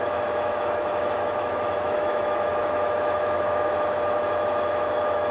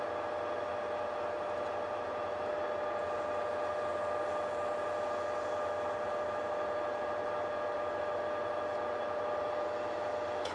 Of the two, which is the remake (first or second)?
first